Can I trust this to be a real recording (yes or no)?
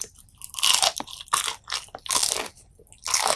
yes